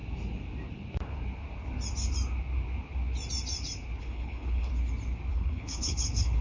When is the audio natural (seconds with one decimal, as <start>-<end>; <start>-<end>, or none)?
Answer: 0.0-4.0; 4.7-5.3